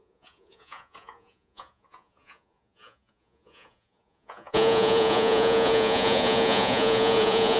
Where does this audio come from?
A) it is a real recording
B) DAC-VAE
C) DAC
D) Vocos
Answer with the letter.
D